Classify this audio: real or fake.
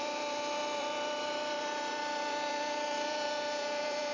fake